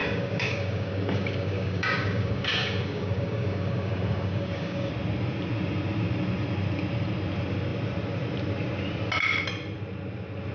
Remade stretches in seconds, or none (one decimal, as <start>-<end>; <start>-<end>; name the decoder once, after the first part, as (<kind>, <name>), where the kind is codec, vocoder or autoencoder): 0.0-4.9 (codec, DAC)